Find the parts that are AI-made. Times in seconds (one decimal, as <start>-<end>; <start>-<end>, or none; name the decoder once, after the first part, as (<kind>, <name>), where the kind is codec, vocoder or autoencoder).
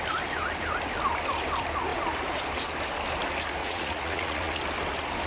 3.6-4.6 (vocoder, Vocos)